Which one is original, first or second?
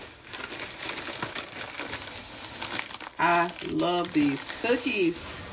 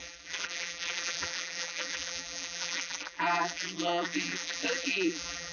first